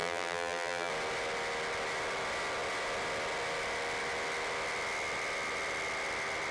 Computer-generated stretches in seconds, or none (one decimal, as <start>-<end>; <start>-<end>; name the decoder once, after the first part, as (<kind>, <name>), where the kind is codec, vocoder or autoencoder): 0.0-0.9 (vocoder, BigVGAN v2)